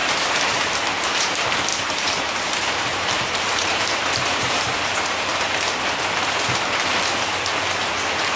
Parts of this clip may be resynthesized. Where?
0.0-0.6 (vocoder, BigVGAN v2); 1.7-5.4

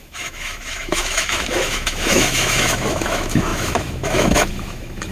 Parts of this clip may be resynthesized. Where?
0.0-5.1 (autoencoder, DAC-VAE)